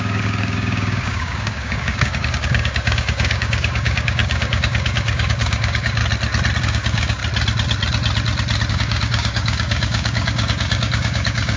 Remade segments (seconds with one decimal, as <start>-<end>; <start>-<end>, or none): 0.0-6.0; 6.6-7.2; 8.7-11.6